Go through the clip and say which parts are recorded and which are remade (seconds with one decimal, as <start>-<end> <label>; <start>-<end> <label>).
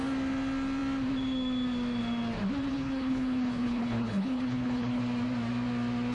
0.0-2.7 recorded; 2.7-5.0 remade; 5.0-6.1 recorded